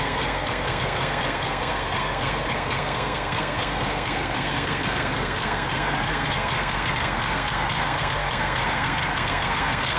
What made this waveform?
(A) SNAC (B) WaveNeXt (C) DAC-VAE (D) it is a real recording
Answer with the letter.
A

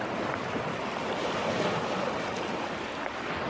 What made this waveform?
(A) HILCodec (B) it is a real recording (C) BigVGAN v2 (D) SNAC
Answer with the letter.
B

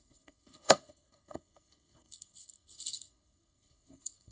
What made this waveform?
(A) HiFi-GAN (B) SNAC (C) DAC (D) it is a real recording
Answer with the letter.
B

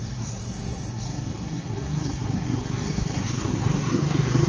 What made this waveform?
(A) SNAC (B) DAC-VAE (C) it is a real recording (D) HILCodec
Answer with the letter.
A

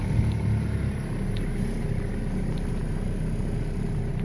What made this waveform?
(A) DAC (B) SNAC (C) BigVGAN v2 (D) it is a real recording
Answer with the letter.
D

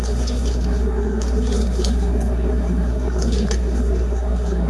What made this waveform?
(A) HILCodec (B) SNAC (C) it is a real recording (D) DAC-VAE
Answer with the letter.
B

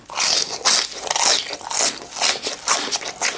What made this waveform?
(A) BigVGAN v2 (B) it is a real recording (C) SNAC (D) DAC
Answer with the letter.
B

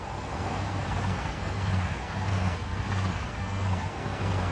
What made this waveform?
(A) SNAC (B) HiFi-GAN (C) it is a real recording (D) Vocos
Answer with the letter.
A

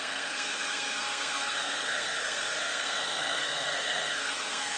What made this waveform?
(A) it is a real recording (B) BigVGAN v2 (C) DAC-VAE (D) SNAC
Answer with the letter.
D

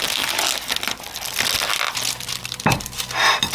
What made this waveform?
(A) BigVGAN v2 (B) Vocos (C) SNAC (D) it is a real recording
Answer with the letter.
D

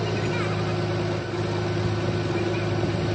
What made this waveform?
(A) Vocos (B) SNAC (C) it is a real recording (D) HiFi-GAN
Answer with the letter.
C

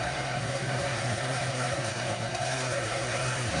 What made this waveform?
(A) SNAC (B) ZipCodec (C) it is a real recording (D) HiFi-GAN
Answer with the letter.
A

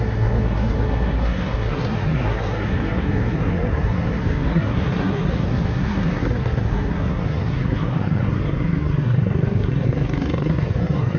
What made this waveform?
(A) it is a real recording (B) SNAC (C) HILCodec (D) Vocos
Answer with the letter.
B